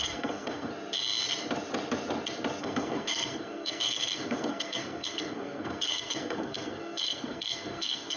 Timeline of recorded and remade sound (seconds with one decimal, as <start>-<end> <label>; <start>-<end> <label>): 0.0-0.7 remade; 0.7-2.6 recorded; 2.6-8.2 remade